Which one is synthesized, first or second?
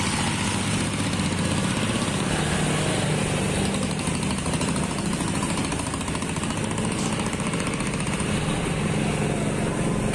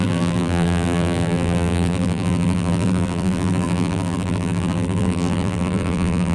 second